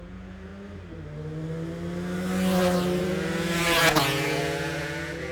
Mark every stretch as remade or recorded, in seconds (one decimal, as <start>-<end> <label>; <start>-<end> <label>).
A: 0.0-0.5 remade; 0.5-3.0 recorded; 3.0-5.3 remade